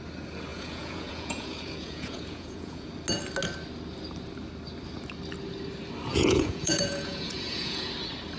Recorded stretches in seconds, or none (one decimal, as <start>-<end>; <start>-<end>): 0.0-0.5; 2.9-6.1; 7.9-8.4